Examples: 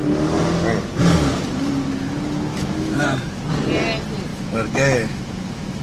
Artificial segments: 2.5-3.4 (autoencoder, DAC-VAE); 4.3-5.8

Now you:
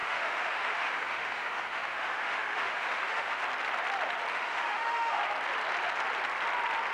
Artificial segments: 0.0-3.4 (autoencoder, DAC-VAE); 4.3-5.2

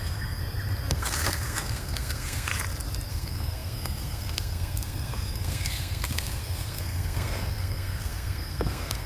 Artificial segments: 0.0-0.4 (codec, SNAC); 0.9-2.5; 3.1-9.1

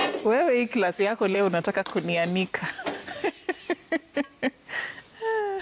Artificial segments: 1.0-1.9 (vocoder, WaveNeXt)

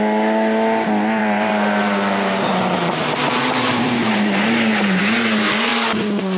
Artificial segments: 1.2-5.0 (vocoder, BigVGAN v2); 5.7-6.4

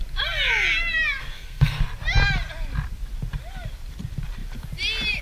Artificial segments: 1.2-1.8 (codec, SNAC)

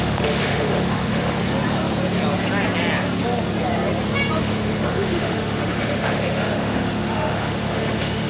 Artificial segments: 0.0-1.4 (autoencoder, DAC-VAE); 4.4-8.3

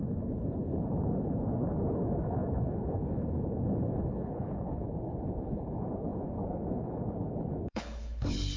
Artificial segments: 0.0-8.6 (codec, HILCodec)